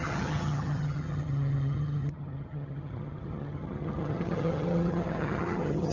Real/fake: fake